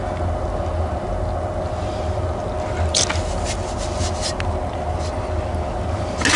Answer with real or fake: real